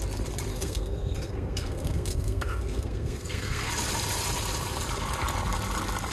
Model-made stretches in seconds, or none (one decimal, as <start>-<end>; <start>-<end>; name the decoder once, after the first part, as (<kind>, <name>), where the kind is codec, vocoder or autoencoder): 0.5-3.7 (codec, SNAC)